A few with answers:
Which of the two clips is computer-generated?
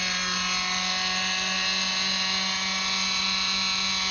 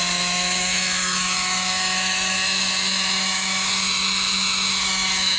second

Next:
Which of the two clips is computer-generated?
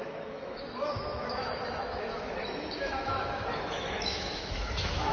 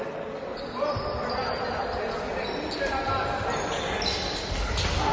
first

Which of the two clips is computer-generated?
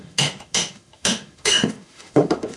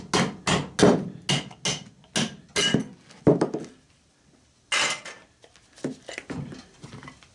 first